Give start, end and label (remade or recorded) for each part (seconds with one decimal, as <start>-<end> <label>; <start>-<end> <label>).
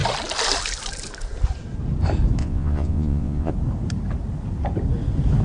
0.0-2.4 recorded; 2.4-3.5 remade; 3.5-5.4 recorded